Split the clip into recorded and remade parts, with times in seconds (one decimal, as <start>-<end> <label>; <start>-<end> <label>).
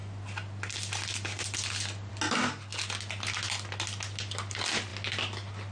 0.0-5.7 recorded